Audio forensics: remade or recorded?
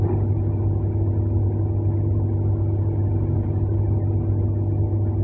recorded